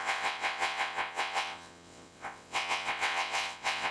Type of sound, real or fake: fake